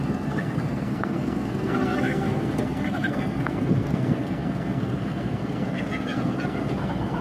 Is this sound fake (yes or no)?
yes